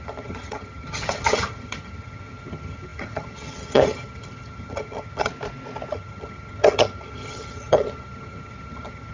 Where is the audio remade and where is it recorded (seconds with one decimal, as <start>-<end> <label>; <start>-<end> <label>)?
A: 0.0-5.3 remade; 5.3-5.9 recorded; 5.9-9.1 remade